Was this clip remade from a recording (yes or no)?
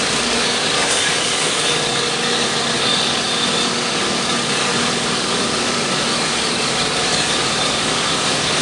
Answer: yes